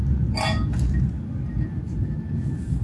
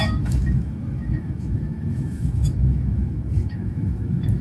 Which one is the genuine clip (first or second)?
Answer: first